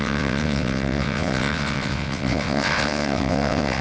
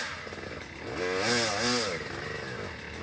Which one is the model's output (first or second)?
first